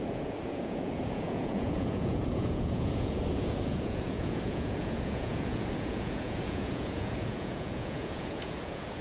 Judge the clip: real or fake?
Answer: fake